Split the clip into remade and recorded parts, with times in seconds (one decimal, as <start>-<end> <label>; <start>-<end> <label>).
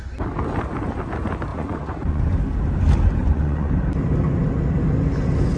0.0-1.5 recorded; 1.5-2.2 remade; 2.2-3.2 recorded; 3.2-3.7 remade; 3.7-5.6 recorded